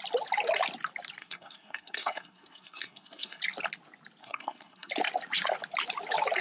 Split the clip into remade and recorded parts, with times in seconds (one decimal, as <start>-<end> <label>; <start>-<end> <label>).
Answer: 0.0-1.2 recorded; 1.2-3.4 remade; 3.4-4.2 recorded; 4.2-4.9 remade; 4.9-6.4 recorded